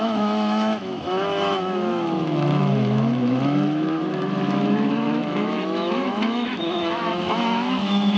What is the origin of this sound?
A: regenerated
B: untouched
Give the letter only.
A